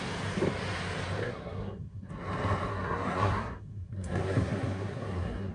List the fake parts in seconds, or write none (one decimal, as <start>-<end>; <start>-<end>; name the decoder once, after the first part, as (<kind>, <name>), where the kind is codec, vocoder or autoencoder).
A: 1.2-2.1 (codec, SNAC); 2.7-5.5